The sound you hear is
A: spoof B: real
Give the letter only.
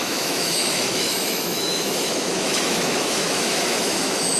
A